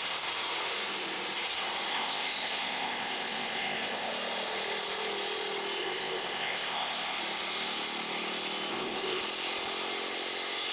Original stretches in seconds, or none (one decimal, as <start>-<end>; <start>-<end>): 0.0-1.9; 4.1-5.8; 7.2-8.7; 9.2-10.7